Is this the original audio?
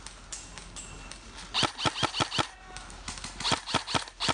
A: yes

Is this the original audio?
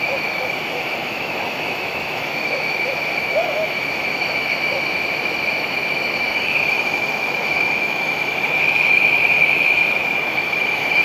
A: no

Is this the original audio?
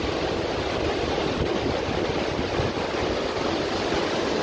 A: yes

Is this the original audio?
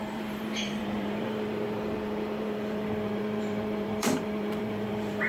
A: no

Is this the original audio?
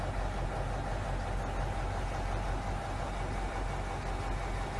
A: yes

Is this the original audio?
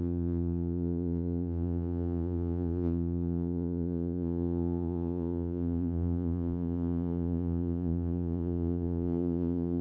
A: no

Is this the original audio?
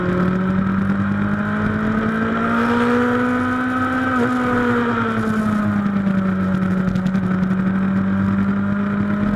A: yes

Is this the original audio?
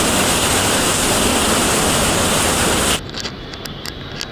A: yes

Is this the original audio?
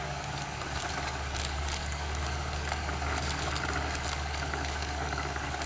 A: no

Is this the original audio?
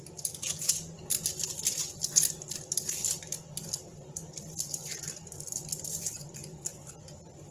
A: yes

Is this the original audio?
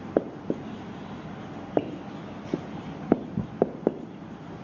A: yes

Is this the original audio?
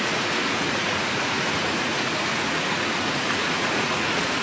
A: no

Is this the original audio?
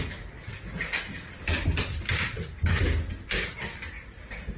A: yes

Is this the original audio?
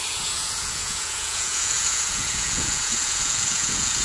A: no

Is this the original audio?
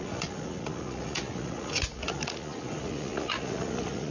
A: no